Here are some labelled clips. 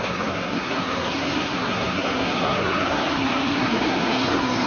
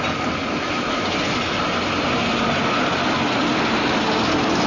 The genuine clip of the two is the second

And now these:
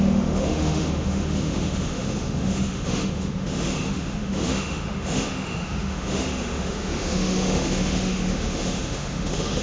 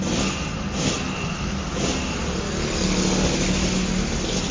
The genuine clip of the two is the second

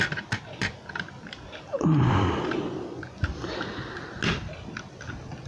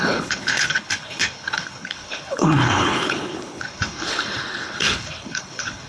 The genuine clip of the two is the first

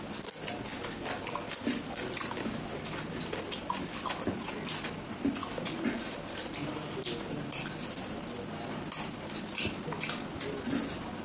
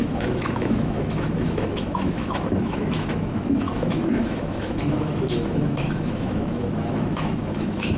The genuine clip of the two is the first